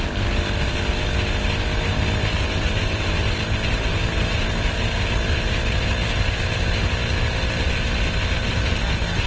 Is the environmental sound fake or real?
real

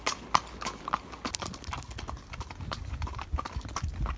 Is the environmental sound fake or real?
real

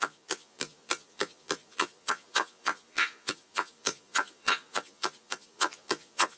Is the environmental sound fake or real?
fake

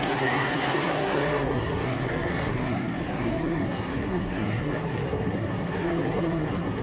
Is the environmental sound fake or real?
fake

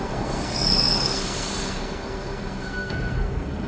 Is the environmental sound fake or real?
fake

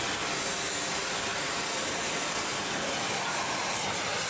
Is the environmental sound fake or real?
real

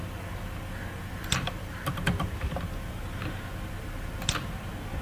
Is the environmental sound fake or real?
real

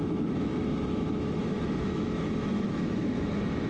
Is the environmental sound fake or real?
fake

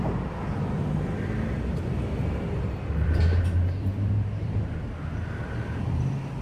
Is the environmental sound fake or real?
fake